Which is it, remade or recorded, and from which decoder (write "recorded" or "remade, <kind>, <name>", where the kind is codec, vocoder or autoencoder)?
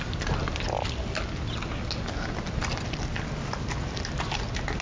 recorded